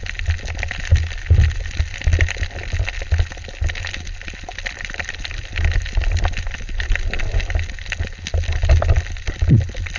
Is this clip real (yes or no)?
yes